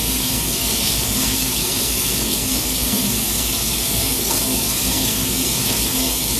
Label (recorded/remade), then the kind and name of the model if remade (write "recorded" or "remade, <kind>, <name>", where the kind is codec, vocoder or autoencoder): remade, codec, SNAC